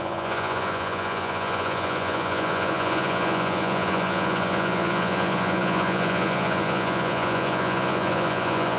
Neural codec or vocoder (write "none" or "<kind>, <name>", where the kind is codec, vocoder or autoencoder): vocoder, Vocos